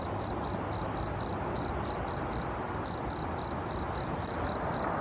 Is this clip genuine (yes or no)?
yes